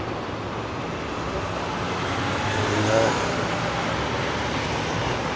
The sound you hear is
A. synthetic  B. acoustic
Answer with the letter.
B